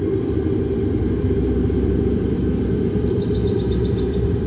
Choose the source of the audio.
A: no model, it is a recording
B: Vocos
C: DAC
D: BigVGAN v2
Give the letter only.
D